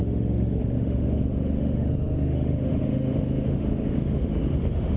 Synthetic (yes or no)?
yes